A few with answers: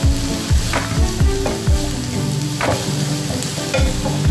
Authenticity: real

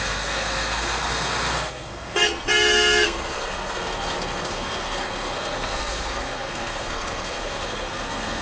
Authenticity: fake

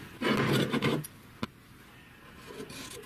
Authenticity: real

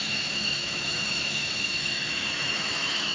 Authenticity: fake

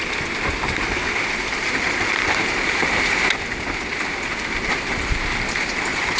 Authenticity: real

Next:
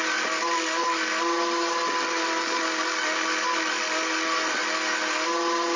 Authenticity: real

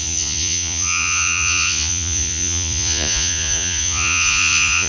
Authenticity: fake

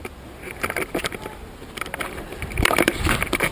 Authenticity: real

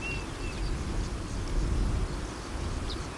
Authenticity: real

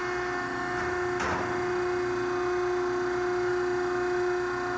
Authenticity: real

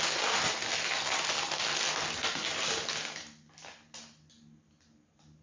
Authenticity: real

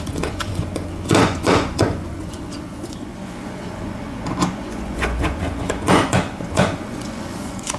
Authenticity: fake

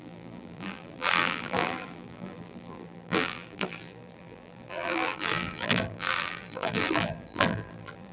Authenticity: fake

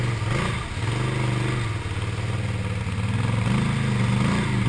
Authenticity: real